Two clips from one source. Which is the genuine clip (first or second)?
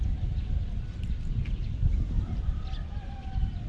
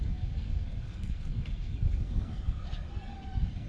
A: first